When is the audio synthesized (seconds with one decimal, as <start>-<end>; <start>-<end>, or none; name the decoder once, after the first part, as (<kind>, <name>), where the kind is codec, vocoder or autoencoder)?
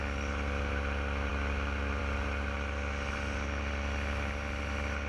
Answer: none